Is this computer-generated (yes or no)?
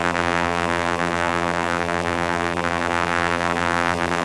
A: yes